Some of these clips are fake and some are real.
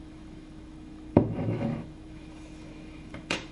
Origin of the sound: fake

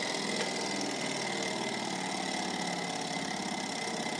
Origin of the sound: real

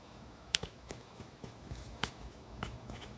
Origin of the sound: fake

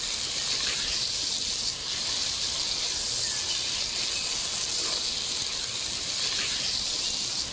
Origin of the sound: real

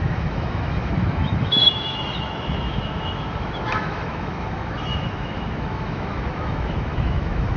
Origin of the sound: fake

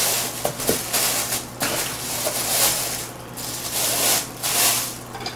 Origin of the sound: real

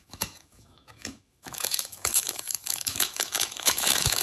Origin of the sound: fake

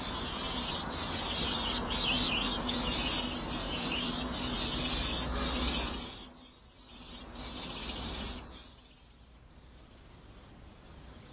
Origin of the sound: real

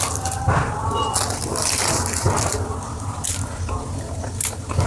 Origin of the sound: real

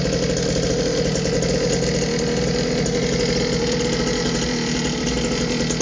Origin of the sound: real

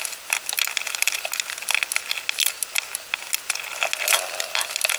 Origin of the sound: real